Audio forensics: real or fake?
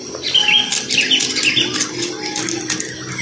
real